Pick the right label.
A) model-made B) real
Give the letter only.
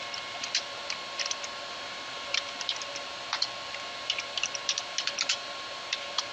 B